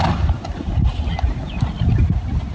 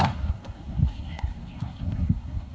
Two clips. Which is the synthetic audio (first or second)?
second